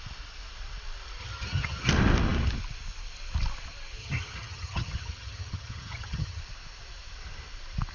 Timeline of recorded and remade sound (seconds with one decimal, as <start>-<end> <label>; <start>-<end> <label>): 0.0-1.2 recorded; 1.2-1.9 remade; 1.9-4.0 recorded; 4.0-6.4 remade; 6.4-7.9 recorded